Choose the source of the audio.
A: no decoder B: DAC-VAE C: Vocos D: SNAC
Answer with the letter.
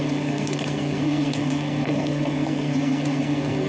D